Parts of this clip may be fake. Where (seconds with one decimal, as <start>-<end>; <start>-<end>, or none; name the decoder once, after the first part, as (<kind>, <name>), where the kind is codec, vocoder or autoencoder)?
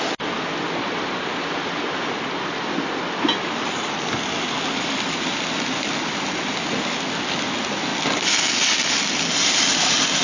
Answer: none